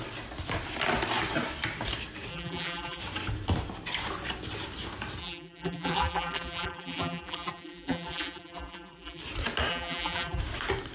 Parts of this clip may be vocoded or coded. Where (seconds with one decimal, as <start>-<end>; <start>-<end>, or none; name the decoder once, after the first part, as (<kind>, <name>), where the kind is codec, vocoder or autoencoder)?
2.3-3.0 (vocoder, BigVGAN v2); 5.2-9.2; 9.7-10.4